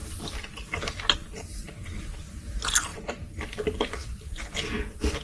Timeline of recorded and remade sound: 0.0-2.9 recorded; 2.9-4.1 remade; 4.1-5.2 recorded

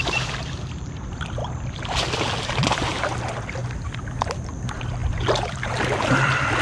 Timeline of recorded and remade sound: 0.0-1.4 remade; 1.4-2.4 recorded; 2.4-3.6 remade; 3.6-4.1 recorded; 4.1-6.6 remade

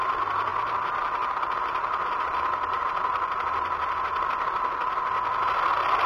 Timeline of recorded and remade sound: 0.0-0.5 recorded; 0.5-4.2 remade; 4.2-6.1 recorded

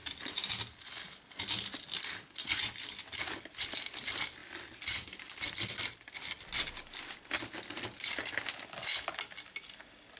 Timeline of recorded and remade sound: 0.0-2.4 recorded; 2.4-3.0 remade; 3.0-4.4 recorded; 4.4-6.5 remade; 6.5-10.2 recorded

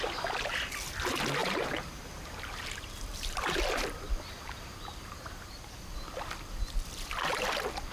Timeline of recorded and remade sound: 0.0-1.4 recorded; 1.4-3.6 remade; 3.6-4.4 recorded; 4.4-5.8 remade; 5.8-7.9 recorded

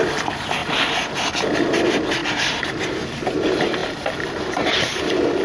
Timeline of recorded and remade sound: 0.0-3.8 recorded; 3.8-5.0 remade; 5.0-5.4 recorded